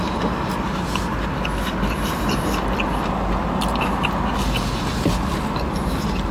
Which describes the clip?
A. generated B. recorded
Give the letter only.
B